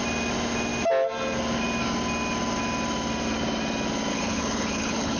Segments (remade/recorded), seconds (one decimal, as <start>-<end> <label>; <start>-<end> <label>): 0.0-4.1 recorded; 4.1-5.2 remade